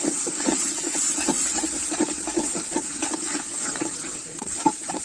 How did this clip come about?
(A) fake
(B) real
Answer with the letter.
A